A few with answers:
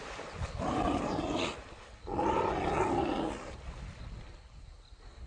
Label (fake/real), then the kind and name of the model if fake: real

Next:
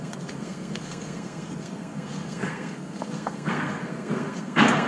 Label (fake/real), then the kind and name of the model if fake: fake, codec, SNAC